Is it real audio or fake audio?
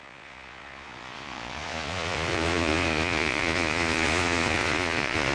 fake